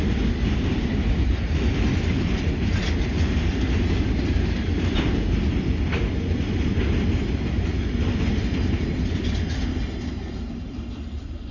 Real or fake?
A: real